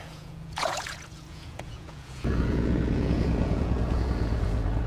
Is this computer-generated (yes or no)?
yes